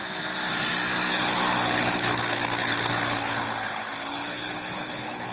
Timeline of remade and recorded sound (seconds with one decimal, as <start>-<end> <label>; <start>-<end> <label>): 0.0-1.1 recorded; 1.1-5.3 remade